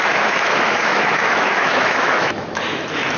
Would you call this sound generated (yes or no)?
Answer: yes